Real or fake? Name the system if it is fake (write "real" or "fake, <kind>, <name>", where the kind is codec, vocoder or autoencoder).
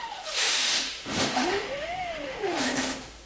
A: fake, autoencoder, DAC-VAE